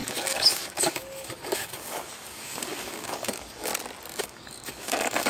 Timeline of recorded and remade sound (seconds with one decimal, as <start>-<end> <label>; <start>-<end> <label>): 0.0-3.7 remade; 3.7-4.2 recorded; 4.2-5.3 remade